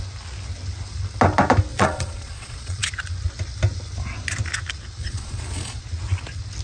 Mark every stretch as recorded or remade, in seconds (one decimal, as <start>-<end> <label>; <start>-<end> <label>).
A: 0.0-1.7 recorded; 1.7-2.9 remade; 2.9-5.0 recorded; 5.0-5.8 remade; 5.8-6.6 recorded